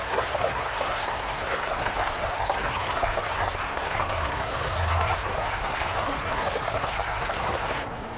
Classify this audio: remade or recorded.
remade